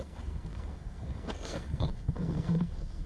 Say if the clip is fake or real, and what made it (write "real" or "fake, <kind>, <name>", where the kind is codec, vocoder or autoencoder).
fake, codec, SNAC